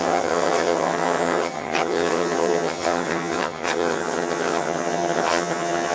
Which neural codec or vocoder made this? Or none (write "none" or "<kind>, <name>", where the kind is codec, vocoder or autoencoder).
vocoder, HiFi-GAN